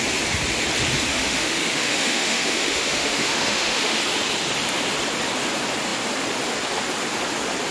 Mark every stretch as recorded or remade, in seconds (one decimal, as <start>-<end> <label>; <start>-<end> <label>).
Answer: 0.0-1.1 recorded; 1.1-4.0 remade; 4.0-7.7 recorded